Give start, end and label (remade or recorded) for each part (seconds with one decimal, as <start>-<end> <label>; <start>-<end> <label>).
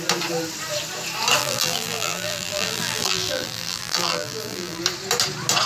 0.0-1.4 recorded; 1.4-4.8 remade; 4.8-5.7 recorded